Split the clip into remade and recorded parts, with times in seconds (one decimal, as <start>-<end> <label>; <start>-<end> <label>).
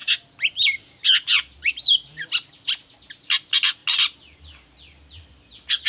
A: 0.0-5.9 recorded